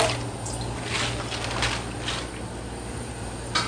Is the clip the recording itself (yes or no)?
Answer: yes